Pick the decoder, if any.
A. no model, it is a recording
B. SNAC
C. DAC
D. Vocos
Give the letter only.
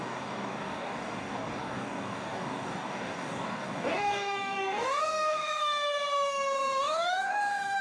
C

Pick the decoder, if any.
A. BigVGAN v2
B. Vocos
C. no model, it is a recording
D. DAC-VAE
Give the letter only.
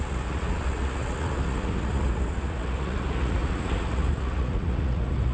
B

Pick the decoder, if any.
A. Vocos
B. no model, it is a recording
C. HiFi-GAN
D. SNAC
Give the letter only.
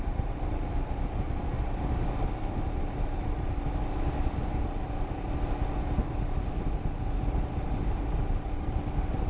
B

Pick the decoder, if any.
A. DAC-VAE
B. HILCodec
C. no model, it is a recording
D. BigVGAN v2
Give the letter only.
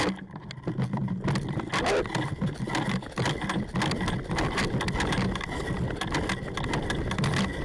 C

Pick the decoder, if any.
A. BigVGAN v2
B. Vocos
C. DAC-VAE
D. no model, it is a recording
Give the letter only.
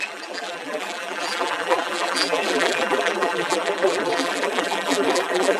A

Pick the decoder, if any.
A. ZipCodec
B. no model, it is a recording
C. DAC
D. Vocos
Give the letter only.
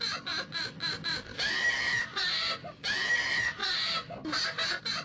B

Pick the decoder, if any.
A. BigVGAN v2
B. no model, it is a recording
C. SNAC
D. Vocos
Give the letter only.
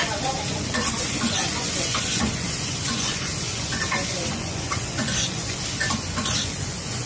D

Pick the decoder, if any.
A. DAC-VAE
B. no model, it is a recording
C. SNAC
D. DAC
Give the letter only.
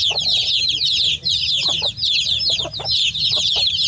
B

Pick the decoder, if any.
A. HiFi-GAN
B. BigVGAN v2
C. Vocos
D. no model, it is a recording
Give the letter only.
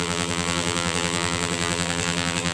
B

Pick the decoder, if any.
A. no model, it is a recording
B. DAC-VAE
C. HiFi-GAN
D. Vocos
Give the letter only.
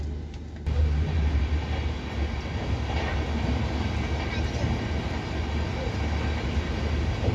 A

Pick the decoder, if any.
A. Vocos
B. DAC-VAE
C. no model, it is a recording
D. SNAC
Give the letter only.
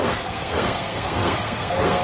D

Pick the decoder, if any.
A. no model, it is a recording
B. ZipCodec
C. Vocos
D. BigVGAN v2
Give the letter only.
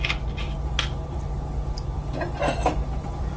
A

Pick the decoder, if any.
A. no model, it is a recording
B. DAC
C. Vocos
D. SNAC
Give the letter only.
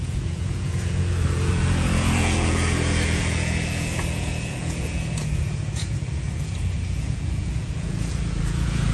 C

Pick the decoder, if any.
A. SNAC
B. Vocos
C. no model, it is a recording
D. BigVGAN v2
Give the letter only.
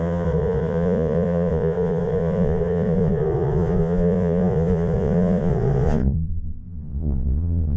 B